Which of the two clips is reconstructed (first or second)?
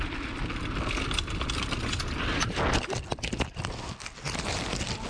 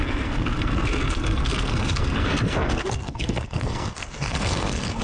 second